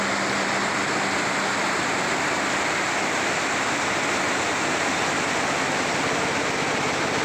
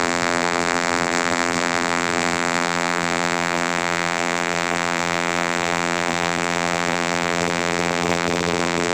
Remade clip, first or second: second